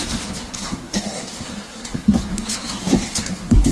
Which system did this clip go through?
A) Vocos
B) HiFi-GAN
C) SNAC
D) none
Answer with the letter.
C